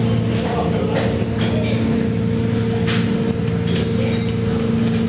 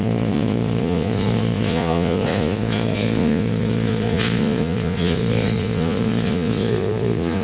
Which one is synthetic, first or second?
second